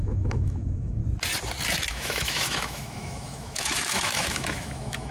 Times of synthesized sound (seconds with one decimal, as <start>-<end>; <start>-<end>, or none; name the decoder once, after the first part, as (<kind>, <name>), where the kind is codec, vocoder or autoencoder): 0.0-1.0 (autoencoder, DAC-VAE); 1.9-5.1